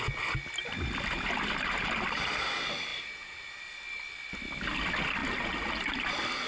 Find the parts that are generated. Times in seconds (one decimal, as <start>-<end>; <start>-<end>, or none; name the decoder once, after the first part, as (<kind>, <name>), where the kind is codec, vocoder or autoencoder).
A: none